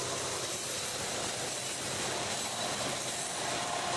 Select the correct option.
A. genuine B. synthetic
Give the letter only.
B